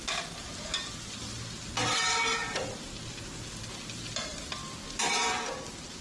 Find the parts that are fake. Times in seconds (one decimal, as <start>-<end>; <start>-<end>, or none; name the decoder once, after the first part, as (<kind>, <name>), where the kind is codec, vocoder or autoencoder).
none